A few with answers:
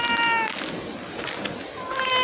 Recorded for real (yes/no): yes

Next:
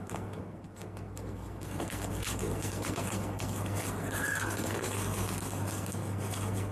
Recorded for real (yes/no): no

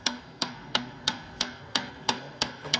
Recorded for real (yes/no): no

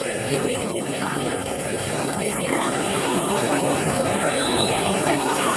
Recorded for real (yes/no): no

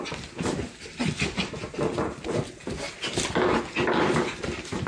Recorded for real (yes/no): yes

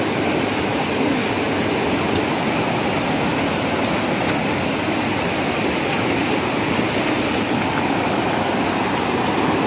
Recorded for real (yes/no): yes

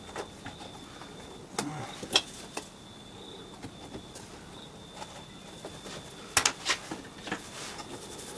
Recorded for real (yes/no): yes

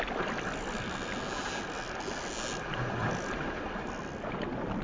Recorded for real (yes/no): yes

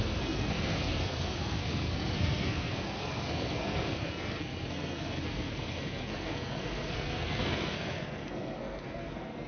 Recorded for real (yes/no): no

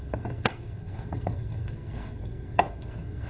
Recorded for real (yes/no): no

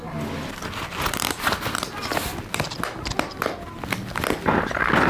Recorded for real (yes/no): yes